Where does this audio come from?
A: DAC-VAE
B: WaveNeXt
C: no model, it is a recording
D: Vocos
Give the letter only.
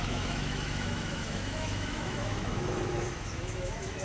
A